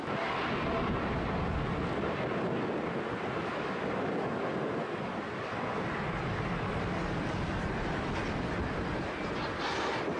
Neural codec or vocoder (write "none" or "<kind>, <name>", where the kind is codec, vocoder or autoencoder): none